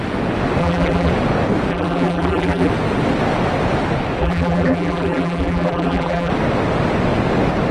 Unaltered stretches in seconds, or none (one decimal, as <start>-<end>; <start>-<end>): 0.0-0.6; 1.1-1.7; 2.7-4.2; 6.3-7.7